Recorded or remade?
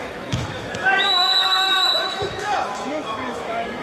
remade